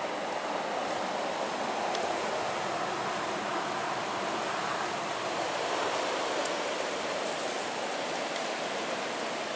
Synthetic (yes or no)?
no